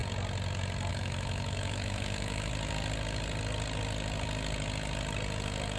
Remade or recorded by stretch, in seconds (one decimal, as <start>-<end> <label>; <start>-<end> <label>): 0.0-0.9 recorded; 0.9-2.5 remade; 2.5-5.8 recorded